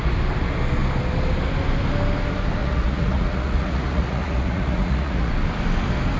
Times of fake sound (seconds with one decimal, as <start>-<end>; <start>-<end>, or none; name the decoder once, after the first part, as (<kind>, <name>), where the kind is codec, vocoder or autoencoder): 2.6-5.3 (vocoder, Vocos)